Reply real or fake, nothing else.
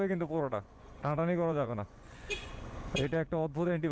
fake